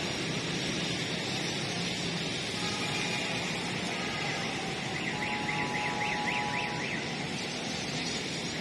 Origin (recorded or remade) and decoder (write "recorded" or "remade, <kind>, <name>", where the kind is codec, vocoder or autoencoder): recorded